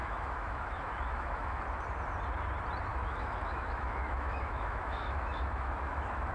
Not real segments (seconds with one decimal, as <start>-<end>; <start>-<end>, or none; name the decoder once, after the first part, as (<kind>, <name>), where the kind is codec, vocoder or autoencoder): 0.0-1.6 (autoencoder, DAC-VAE); 2.9-6.3